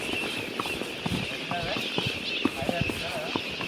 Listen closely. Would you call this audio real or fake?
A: real